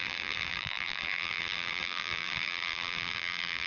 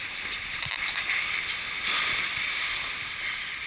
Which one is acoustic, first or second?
second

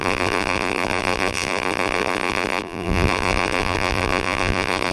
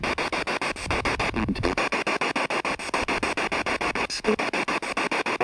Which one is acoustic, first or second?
second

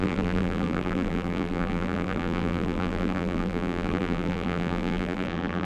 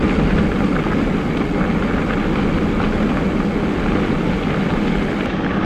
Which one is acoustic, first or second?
second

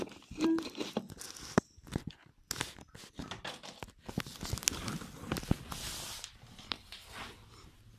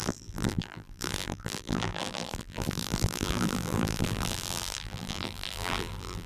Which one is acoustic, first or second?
first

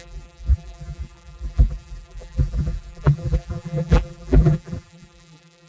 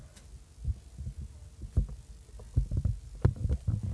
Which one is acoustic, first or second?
second